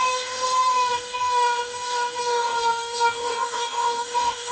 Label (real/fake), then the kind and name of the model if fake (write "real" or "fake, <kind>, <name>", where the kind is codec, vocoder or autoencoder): fake, codec, DAC